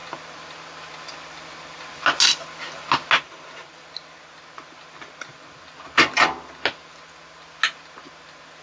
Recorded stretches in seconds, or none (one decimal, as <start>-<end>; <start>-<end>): 0.0-8.6

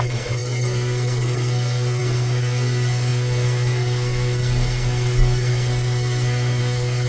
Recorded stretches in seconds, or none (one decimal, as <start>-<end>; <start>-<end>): none